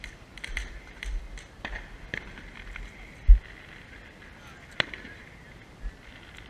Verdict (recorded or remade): recorded